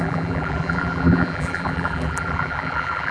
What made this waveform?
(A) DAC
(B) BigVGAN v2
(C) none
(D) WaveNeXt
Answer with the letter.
B